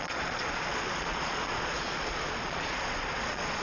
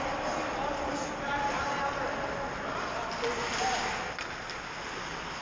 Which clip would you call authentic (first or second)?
second